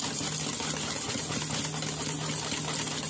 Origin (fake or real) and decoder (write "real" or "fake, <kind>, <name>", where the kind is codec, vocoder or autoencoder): real